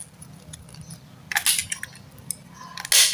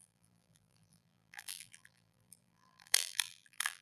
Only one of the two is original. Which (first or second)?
first